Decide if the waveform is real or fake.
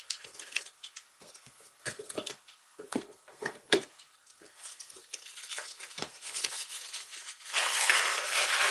fake